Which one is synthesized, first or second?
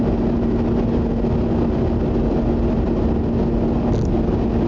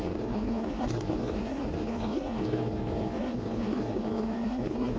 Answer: second